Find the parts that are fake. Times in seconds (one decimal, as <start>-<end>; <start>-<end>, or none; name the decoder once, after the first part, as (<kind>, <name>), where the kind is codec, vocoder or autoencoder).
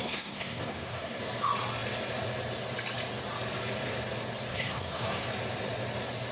0.0-1.2 (codec, SNAC); 4.5-5.3